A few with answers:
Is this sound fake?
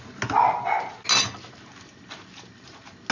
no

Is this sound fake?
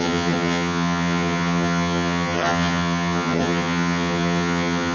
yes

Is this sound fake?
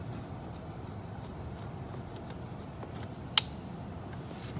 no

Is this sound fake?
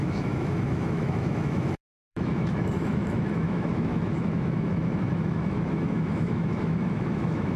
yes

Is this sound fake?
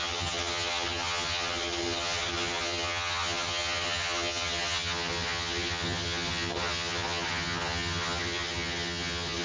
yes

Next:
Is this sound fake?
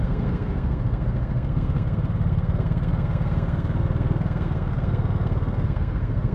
yes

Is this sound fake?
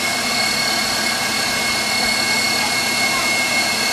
no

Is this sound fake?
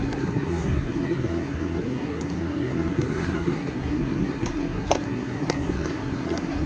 yes